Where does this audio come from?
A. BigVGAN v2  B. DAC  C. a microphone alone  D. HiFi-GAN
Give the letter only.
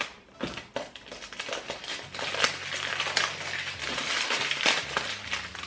C